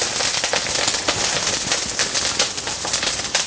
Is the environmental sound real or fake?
fake